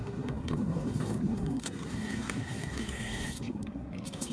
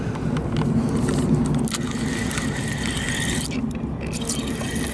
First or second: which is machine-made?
first